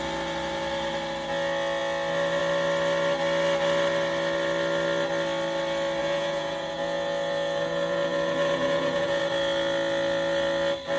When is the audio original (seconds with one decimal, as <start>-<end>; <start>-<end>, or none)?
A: 0.0-6.0; 9.2-11.0